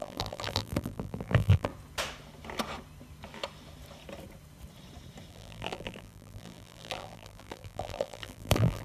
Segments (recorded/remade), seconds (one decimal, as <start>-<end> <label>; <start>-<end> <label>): 0.0-1.7 remade; 1.7-5.3 recorded; 5.3-8.8 remade